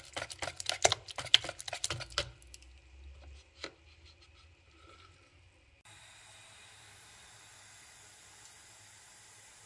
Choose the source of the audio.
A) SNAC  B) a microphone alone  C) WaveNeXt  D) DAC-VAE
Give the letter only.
B